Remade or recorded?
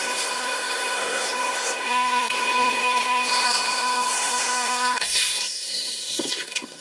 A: remade